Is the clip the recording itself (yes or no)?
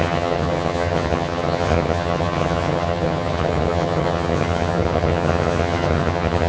no